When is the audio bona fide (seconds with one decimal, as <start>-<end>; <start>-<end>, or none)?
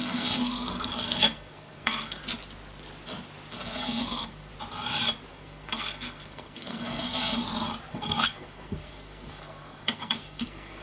2.2-3.5; 4.5-5.3; 7.4-7.9